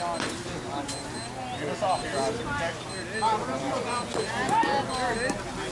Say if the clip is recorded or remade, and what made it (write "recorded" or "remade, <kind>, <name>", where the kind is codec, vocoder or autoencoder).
recorded